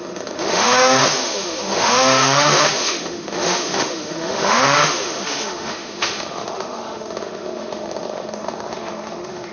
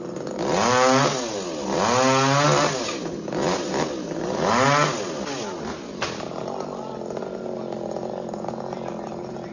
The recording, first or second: second